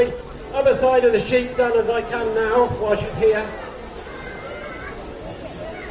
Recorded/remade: recorded